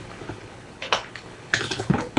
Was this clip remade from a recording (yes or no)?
yes